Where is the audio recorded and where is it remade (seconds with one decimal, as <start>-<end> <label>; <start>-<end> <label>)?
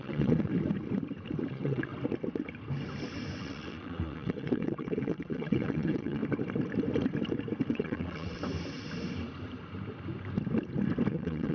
0.0-0.5 remade; 0.5-1.5 recorded; 1.5-1.9 remade; 1.9-3.4 recorded; 3.4-6.2 remade; 6.2-7.7 recorded; 7.7-8.4 remade; 8.4-11.1 recorded; 11.1-11.5 remade